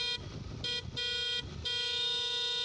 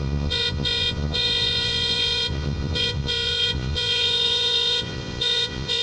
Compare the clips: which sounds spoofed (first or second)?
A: second